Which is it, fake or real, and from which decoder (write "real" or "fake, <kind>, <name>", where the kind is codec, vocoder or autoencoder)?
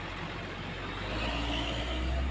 real